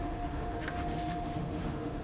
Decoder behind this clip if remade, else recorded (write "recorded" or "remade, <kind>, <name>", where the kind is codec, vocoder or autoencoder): remade, autoencoder, DAC-VAE